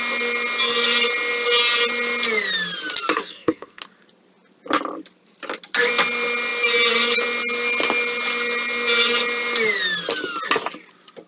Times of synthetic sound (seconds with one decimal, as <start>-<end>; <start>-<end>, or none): 3.1-3.8